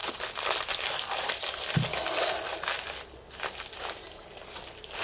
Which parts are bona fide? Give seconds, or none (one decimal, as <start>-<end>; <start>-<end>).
0.0-5.0